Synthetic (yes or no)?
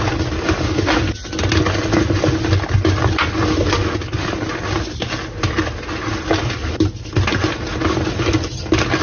no